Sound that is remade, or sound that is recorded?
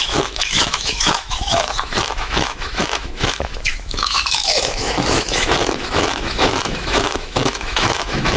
remade